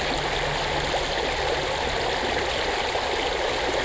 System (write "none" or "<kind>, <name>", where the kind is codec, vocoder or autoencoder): none